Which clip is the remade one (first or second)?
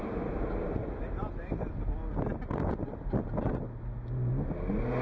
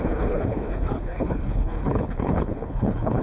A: second